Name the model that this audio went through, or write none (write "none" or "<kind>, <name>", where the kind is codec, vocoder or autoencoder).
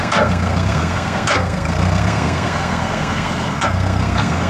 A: codec, SNAC